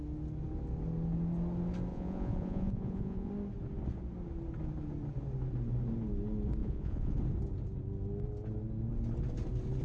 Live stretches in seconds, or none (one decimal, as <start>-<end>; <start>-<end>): 0.0-1.9; 3.3-6.6; 7.2-9.8